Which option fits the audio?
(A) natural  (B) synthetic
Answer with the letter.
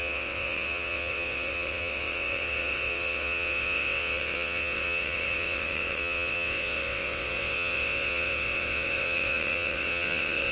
B